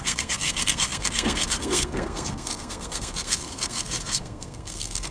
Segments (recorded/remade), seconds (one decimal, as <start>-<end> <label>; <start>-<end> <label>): 0.0-5.1 remade